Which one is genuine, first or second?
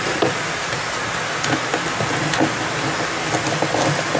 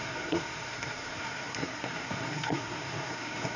first